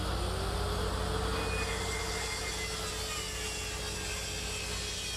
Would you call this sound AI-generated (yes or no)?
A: no